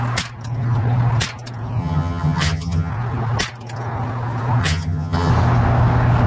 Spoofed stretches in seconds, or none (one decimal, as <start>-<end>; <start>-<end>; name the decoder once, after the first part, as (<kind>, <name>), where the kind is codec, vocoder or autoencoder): 1.8-2.9 (vocoder, HiFi-GAN); 4.6-5.3